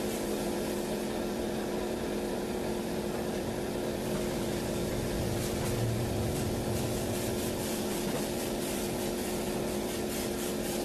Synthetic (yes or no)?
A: no